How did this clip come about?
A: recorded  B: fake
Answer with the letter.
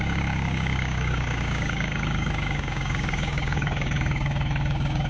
B